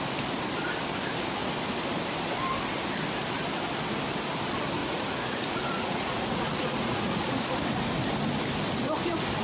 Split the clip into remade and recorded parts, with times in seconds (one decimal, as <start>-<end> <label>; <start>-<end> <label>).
0.0-4.8 recorded; 4.8-7.6 remade; 7.6-9.4 recorded